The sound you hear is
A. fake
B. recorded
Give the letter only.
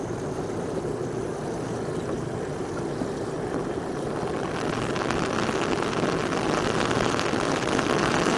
B